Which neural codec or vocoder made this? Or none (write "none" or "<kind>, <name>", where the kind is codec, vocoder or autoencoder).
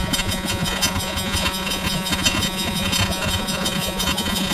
vocoder, Vocos